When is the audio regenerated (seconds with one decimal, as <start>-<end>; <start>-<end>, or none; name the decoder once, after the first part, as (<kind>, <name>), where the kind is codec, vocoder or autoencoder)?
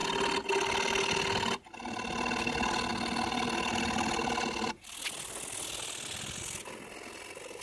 none